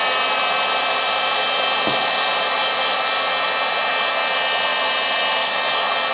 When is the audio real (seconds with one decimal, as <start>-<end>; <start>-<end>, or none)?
0.0-6.1